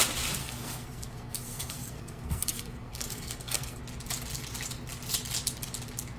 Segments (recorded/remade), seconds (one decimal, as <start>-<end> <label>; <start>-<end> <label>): 0.0-0.4 recorded; 0.4-3.8 remade; 3.8-6.2 recorded